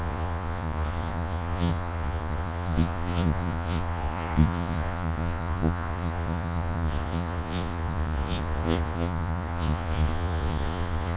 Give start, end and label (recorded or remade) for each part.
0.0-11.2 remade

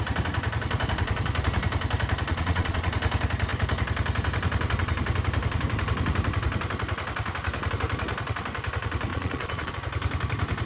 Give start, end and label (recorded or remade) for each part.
0.0-2.3 recorded; 2.3-2.9 remade; 2.9-9.1 recorded; 9.1-9.7 remade; 9.7-10.7 recorded

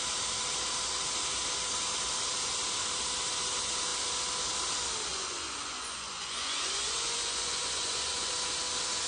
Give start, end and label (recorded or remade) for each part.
0.0-5.1 recorded; 5.1-8.3 remade; 8.3-9.1 recorded

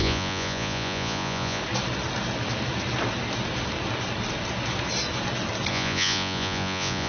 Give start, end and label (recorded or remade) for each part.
0.0-1.6 remade; 1.6-5.7 recorded; 5.7-7.1 remade

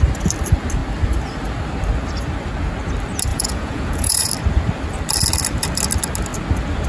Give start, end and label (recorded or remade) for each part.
0.0-3.3 recorded; 3.3-4.3 remade; 4.3-6.9 recorded